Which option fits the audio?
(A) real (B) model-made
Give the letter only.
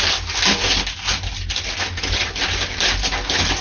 A